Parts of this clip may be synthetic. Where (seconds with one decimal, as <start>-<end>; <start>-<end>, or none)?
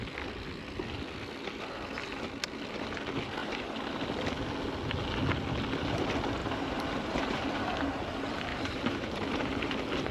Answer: 3.4-4.0; 6.4-7.4; 8.5-9.7